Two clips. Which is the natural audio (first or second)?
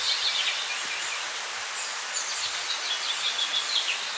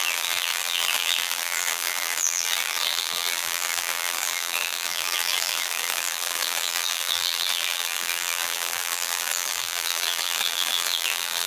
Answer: first